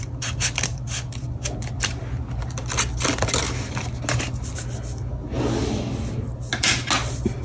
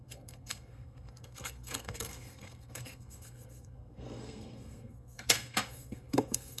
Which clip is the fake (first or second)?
second